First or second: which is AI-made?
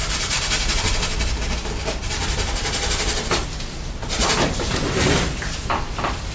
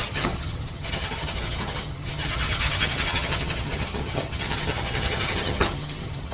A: second